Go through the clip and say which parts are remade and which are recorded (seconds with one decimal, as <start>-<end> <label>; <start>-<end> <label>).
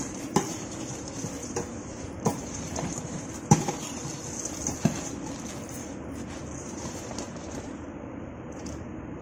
0.0-4.0 remade; 4.0-6.6 recorded; 6.6-9.2 remade